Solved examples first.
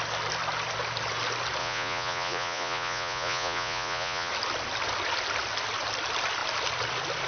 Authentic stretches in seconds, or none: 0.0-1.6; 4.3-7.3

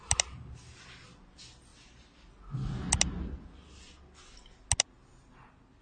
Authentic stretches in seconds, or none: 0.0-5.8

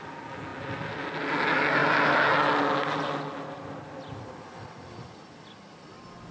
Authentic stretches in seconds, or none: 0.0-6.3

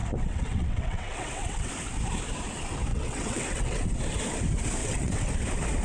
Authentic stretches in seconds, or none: 1.7-2.9; 4.0-4.8; 5.3-5.8

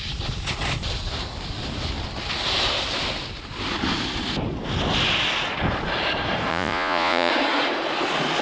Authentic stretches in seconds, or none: 0.0-6.5; 7.3-8.4